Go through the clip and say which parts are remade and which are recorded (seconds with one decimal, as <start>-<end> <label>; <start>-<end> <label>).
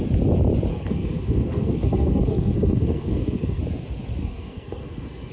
0.0-0.7 recorded; 0.7-3.6 remade; 3.6-4.2 recorded; 4.2-5.3 remade